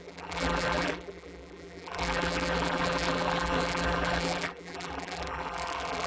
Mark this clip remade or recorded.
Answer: remade